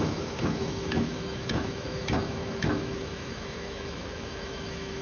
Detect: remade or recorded remade